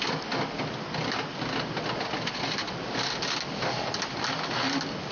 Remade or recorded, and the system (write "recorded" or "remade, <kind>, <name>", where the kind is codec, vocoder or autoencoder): recorded